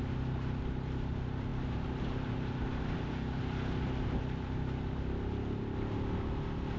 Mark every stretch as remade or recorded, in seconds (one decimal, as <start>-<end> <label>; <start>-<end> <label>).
0.0-6.8 recorded